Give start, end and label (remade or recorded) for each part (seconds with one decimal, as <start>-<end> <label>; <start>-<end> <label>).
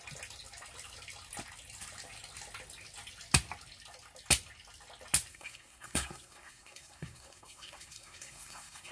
0.0-5.3 recorded; 5.3-8.9 remade